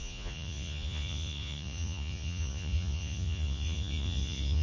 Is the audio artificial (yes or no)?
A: yes